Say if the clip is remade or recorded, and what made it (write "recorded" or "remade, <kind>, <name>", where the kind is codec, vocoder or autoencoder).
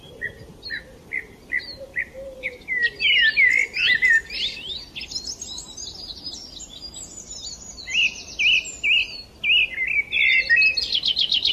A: recorded